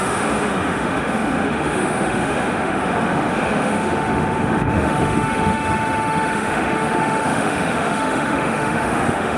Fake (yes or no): yes